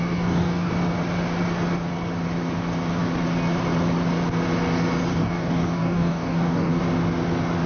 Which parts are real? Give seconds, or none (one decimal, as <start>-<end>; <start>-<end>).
0.7-5.1; 6.8-7.7